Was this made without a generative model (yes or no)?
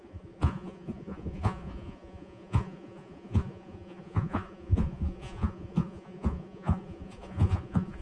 no